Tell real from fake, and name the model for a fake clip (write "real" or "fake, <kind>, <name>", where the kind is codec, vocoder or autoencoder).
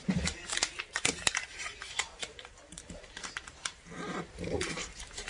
fake, vocoder, BigVGAN v2